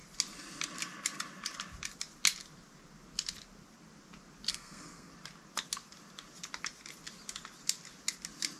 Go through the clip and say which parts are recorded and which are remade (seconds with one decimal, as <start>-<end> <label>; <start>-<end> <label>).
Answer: 0.0-4.5 recorded; 4.5-5.1 remade; 5.1-8.6 recorded